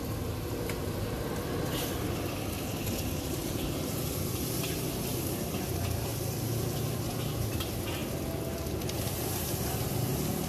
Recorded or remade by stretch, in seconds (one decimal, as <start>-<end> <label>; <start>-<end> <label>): 0.0-10.5 recorded